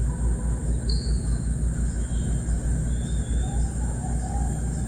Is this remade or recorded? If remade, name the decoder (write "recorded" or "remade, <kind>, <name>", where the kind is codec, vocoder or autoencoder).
remade, autoencoder, DAC-VAE